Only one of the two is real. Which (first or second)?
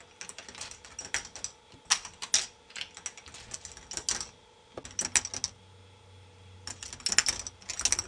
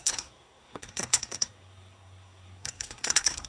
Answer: first